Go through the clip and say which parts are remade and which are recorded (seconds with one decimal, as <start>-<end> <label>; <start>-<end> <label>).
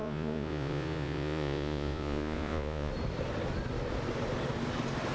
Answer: 0.0-2.9 remade; 2.9-5.1 recorded